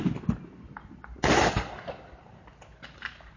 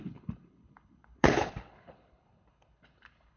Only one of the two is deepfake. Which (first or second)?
second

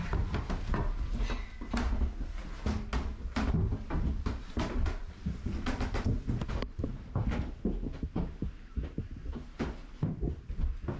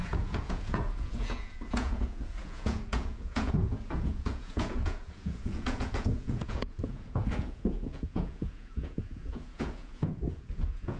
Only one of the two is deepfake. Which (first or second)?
second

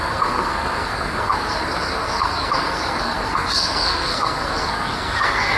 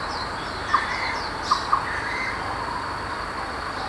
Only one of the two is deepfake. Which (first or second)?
first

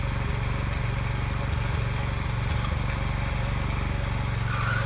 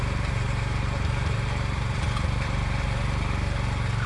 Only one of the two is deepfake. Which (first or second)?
second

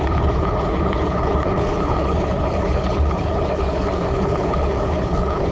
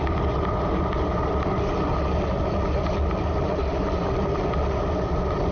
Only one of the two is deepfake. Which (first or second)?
first